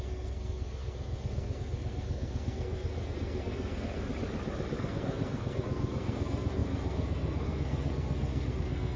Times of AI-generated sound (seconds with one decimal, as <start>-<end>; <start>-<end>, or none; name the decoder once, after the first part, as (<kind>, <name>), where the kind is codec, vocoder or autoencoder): 0.0-4.1 (codec, SNAC); 4.8-9.0

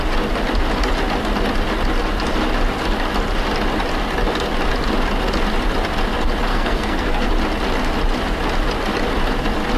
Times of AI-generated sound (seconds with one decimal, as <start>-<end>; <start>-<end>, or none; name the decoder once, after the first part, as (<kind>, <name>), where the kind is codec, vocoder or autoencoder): 6.5-7.3 (codec, SNAC)

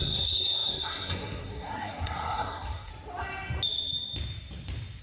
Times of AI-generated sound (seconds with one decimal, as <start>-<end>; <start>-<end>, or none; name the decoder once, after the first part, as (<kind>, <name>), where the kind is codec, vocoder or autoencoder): 0.0-2.9 (codec, SNAC)

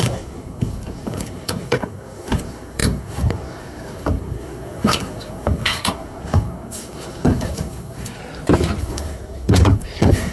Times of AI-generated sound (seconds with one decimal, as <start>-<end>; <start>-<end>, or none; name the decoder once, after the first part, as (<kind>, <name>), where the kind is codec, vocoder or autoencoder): 0.0-8.2 (codec, SNAC); 8.8-10.3